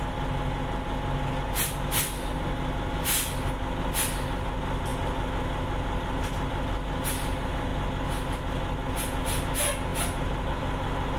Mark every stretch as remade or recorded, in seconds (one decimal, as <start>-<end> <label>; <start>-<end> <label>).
0.0-11.2 recorded